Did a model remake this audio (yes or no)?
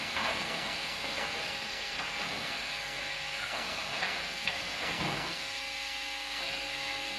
yes